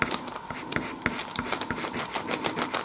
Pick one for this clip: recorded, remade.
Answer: recorded